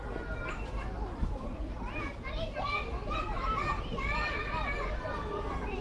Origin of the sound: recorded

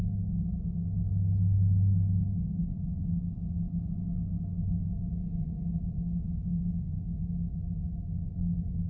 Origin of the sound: recorded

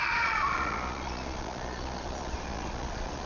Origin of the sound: remade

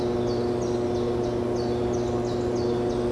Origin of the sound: recorded